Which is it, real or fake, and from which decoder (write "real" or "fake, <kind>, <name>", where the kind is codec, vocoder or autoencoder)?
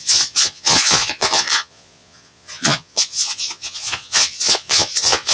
fake, vocoder, Vocos